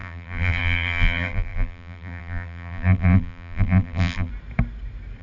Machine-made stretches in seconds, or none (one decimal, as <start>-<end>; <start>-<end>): 0.0-4.3